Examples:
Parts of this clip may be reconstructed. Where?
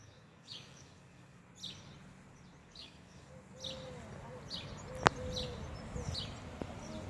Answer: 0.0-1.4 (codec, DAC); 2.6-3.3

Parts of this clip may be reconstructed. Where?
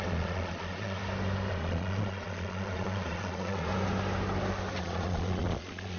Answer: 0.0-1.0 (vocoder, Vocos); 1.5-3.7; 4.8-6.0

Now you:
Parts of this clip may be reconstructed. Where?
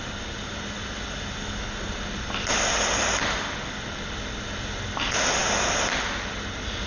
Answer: none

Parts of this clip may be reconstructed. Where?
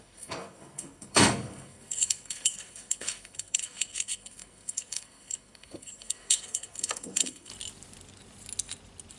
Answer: 0.0-7.5 (codec, SNAC)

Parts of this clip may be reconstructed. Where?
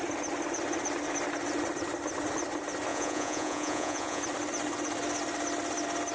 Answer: 2.9-4.2 (vocoder, Vocos)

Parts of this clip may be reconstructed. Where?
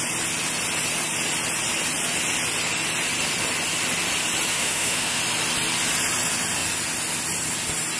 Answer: 4.5-5.2 (autoencoder, DAC-VAE)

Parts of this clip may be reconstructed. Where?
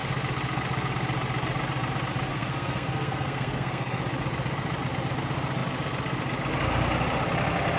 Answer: 2.3-4.0 (codec, SNAC)